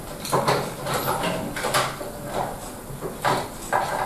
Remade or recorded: recorded